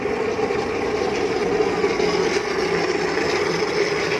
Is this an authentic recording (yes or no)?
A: yes